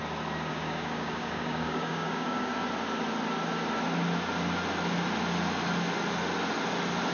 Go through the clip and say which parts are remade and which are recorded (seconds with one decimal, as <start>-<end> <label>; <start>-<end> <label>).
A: 0.0-0.5 recorded; 0.5-2.5 remade; 2.5-7.1 recorded